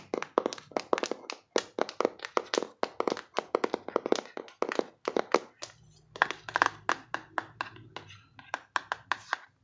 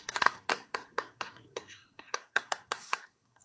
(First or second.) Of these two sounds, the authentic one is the first